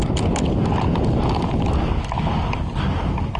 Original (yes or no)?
yes